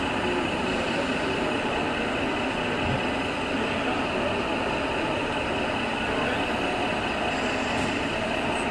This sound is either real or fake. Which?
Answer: real